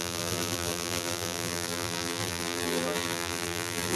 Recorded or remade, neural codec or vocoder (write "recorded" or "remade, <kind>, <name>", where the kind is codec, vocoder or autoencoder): remade, vocoder, BigVGAN v2